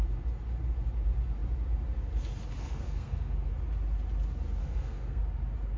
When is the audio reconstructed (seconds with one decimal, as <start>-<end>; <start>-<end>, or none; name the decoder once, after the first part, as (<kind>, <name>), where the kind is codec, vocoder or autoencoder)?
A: 2.6-3.5 (codec, SNAC); 4.6-5.2